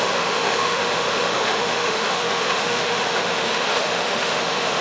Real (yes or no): no